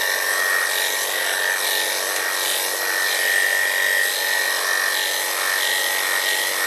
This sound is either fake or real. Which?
real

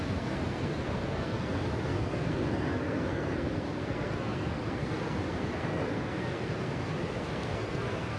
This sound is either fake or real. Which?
fake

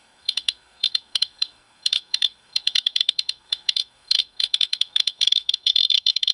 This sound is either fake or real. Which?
fake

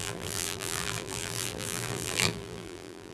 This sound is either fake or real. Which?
fake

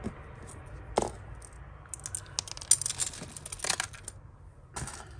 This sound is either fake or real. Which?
real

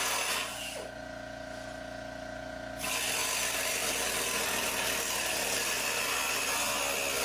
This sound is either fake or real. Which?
real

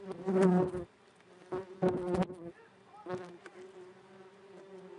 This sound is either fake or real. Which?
real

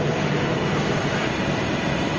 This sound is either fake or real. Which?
fake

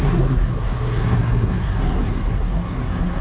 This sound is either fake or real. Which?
fake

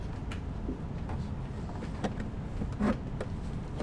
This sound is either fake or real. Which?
real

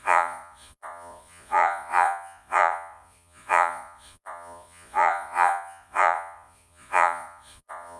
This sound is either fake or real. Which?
fake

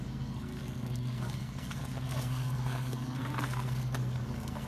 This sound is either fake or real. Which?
fake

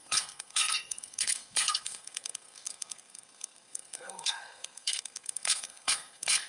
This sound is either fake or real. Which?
fake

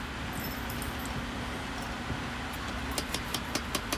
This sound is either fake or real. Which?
real